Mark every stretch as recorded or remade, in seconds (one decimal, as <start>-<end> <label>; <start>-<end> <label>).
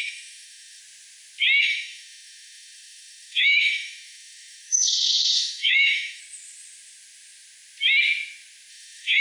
0.0-0.8 remade; 0.8-1.6 recorded; 1.6-6.2 remade; 6.2-8.7 recorded; 8.7-9.2 remade